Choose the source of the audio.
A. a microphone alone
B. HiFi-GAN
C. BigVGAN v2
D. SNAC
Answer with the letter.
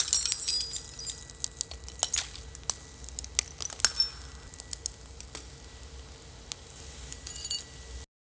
A